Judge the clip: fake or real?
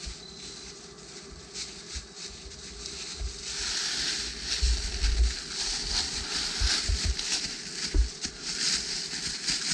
real